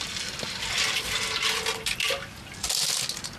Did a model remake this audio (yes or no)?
no